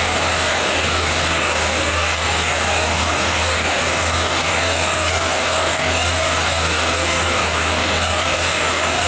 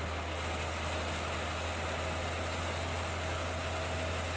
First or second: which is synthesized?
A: first